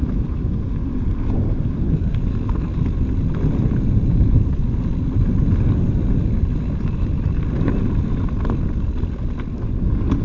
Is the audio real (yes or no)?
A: yes